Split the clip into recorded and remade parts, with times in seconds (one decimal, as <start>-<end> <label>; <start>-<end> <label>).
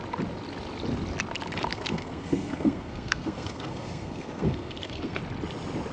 0.0-1.7 recorded; 1.7-5.2 remade; 5.2-5.9 recorded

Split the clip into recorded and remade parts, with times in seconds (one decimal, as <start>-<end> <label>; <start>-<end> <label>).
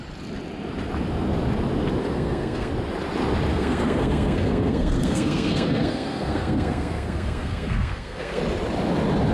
0.0-2.0 recorded; 2.0-2.7 remade; 2.7-3.5 recorded; 3.5-8.4 remade; 8.4-9.3 recorded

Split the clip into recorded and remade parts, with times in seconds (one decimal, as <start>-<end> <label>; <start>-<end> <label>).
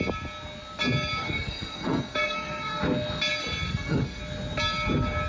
0.0-1.2 recorded; 1.2-2.8 remade; 2.8-3.7 recorded; 3.7-4.2 remade; 4.2-5.3 recorded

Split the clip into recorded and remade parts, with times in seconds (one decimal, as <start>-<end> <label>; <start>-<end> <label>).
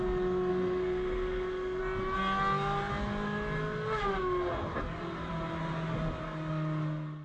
0.0-0.5 recorded; 0.5-1.8 remade; 1.8-7.2 recorded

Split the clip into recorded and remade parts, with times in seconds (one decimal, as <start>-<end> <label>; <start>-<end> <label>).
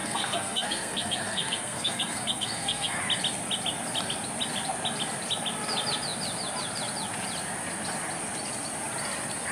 0.0-3.0 remade; 3.0-9.5 recorded